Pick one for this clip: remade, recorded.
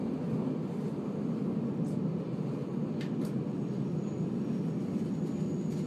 recorded